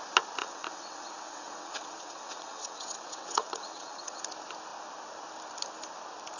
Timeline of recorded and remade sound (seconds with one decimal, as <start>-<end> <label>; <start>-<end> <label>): 0.0-0.4 recorded; 0.4-4.2 remade; 4.2-6.4 recorded